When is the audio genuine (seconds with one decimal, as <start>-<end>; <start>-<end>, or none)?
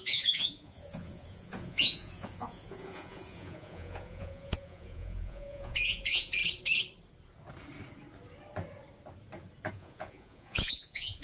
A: 6.4-9.7